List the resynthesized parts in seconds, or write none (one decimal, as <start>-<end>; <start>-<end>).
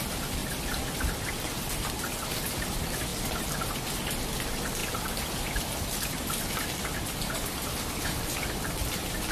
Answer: none